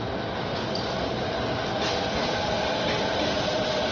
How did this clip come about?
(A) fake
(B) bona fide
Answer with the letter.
B